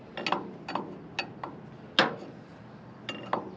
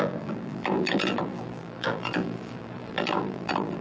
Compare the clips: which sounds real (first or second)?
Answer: first